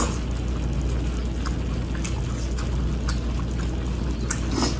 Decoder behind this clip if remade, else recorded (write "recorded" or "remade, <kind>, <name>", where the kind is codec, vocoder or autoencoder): recorded